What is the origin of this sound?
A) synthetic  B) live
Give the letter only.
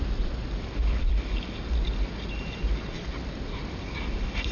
B